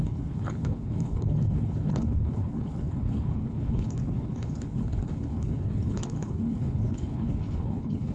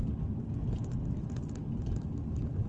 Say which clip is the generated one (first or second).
first